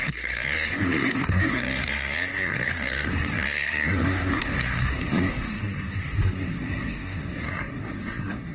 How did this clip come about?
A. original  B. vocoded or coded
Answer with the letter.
B